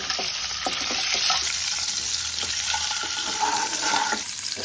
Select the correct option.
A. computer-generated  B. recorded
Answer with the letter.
A